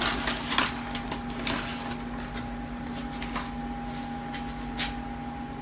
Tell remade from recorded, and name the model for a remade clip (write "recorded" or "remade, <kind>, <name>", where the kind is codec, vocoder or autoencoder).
recorded